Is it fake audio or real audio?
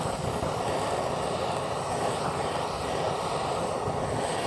real